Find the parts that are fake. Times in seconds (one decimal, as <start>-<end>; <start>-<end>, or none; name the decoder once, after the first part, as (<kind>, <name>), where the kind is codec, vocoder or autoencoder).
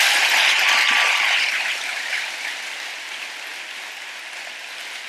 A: none